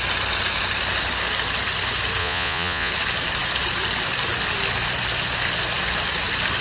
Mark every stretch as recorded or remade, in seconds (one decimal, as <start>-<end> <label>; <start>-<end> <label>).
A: 0.0-2.2 recorded; 2.2-2.9 remade; 2.9-6.6 recorded